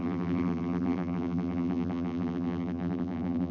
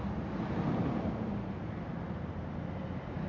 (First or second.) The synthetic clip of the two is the first